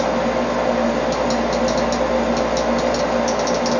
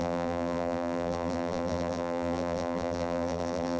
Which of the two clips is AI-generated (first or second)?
second